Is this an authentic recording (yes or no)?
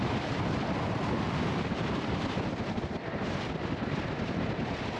yes